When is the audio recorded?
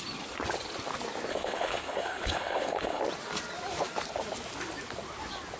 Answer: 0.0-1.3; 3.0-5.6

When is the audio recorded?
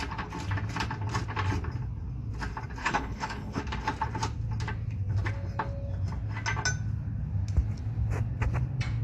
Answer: 0.0-2.8; 3.6-9.0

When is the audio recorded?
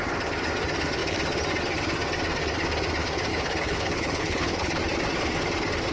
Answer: 0.0-3.3; 4.8-5.9